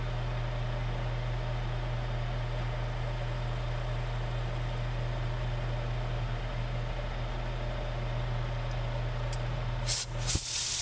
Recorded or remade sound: recorded